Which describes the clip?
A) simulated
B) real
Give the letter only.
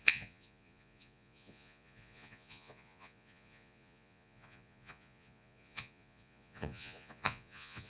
A